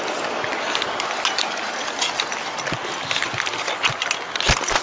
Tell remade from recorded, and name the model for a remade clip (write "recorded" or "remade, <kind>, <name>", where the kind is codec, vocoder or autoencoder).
recorded